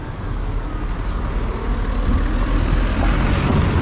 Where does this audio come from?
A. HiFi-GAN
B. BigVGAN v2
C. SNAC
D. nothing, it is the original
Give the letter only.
D